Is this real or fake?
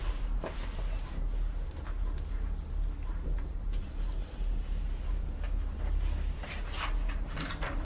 real